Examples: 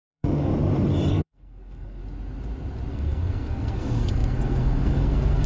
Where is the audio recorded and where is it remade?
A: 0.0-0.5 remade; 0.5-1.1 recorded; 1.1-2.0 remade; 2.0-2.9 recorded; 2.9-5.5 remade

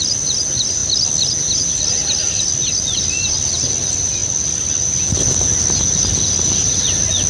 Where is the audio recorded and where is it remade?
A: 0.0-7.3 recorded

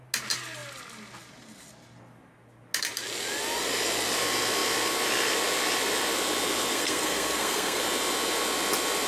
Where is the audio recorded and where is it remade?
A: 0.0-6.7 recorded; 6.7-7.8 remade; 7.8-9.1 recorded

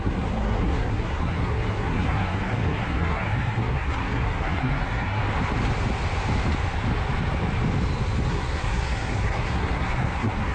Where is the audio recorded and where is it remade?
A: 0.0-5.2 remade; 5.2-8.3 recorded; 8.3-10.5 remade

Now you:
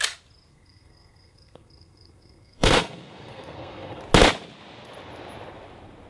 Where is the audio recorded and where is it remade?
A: 0.0-0.5 recorded; 0.5-4.0 remade; 4.0-6.1 recorded

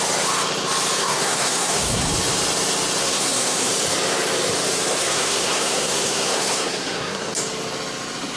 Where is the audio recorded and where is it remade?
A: 0.0-1.0 recorded; 1.0-2.1 remade; 2.1-3.0 recorded; 3.0-3.7 remade; 3.7-5.0 recorded; 5.0-7.3 remade; 7.3-8.4 recorded